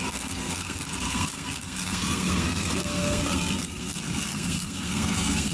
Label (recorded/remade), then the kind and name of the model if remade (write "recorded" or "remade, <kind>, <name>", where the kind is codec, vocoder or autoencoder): remade, codec, SNAC